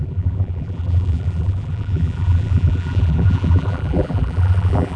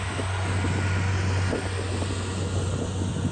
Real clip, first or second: second